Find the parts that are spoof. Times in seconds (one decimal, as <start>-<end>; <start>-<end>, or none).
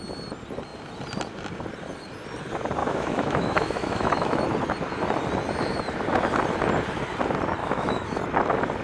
2.8-4.4; 7.6-8.2